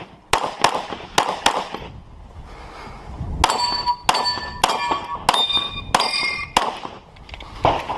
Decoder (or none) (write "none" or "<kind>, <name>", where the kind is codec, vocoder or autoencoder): none